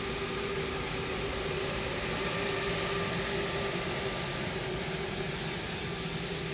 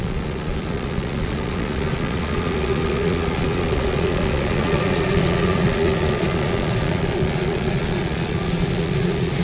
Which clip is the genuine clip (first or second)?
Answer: first